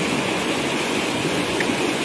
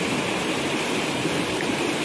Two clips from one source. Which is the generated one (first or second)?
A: first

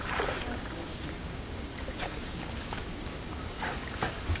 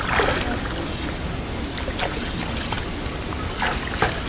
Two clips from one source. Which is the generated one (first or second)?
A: first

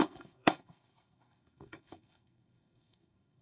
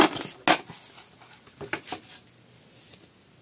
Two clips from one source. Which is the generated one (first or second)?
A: first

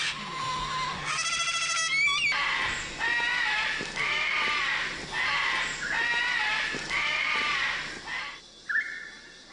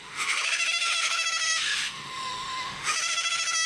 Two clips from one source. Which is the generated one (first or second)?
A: second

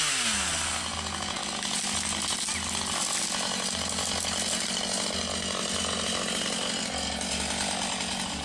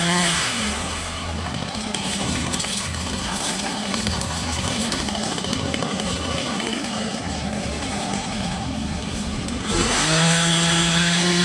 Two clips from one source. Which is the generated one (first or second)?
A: second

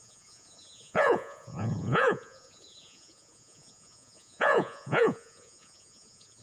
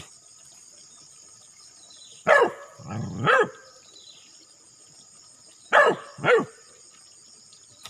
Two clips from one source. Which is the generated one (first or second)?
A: first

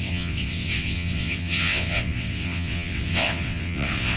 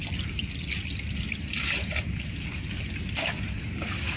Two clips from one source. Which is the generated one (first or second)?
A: first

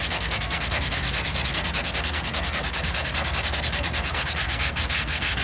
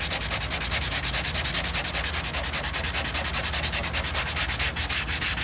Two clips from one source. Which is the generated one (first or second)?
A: first